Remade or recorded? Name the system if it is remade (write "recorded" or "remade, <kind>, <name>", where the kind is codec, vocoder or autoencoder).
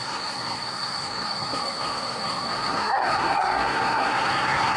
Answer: remade, codec, SNAC